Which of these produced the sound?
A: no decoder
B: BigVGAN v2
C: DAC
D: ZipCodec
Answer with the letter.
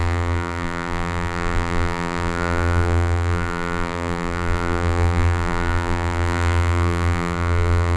B